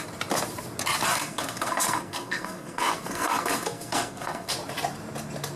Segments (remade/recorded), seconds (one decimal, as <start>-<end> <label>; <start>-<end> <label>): 0.0-1.1 recorded; 1.1-4.5 remade; 4.5-5.6 recorded

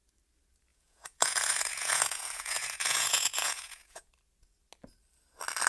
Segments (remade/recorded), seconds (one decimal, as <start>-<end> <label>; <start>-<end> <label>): 0.0-0.7 recorded; 0.7-4.1 remade; 4.1-5.7 recorded